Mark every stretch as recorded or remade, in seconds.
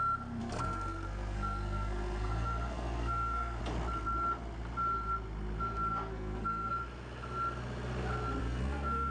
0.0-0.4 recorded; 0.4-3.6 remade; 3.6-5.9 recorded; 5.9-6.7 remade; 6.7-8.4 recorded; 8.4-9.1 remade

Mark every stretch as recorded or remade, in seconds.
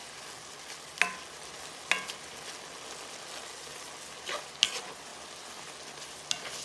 0.0-6.6 recorded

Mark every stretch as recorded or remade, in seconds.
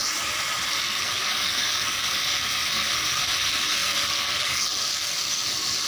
0.0-0.8 recorded; 0.8-5.9 remade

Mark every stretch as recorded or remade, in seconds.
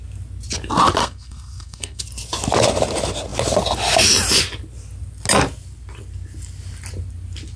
0.0-1.0 recorded; 1.0-2.0 remade; 2.0-7.6 recorded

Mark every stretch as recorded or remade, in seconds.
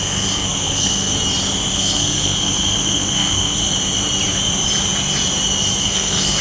0.0-1.1 remade; 1.1-1.7 recorded; 1.7-3.6 remade; 3.6-5.8 recorded; 5.8-6.4 remade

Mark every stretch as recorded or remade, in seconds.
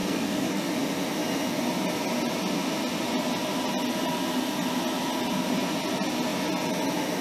0.0-0.7 remade; 0.7-7.2 recorded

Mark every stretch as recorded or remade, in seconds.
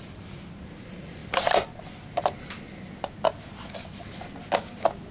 0.0-5.1 recorded